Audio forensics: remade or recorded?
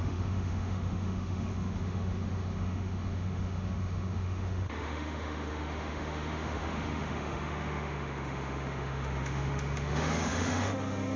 remade